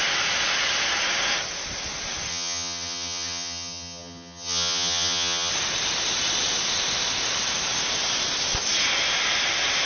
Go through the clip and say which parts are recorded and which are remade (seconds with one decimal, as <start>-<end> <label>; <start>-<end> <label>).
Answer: 0.0-2.3 recorded; 2.3-5.5 remade; 5.5-9.9 recorded